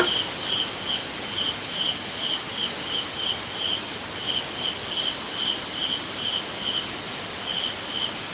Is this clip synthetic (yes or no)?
no